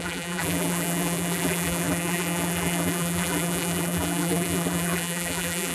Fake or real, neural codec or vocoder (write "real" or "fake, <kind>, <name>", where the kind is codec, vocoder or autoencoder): fake, vocoder, BigVGAN v2